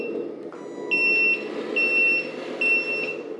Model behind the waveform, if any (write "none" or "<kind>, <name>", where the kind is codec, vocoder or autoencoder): none